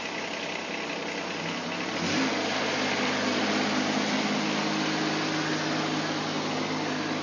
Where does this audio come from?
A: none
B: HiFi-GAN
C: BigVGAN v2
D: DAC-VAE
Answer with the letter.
A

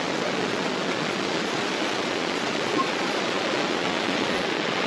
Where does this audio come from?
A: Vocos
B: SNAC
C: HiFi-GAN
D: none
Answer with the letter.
A